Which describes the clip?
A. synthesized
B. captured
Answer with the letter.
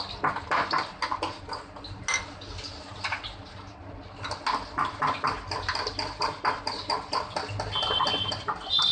B